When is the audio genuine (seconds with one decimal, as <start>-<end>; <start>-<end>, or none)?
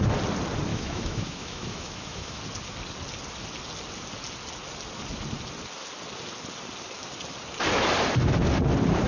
0.0-0.7; 2.4-9.1